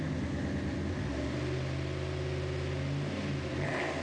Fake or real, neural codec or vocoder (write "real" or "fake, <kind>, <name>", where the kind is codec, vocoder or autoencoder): real